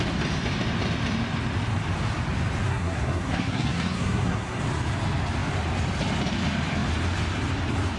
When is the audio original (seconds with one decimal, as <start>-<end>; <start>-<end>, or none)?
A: 0.0-2.7; 4.6-8.0